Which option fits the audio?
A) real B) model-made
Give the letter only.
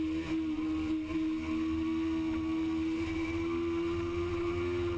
A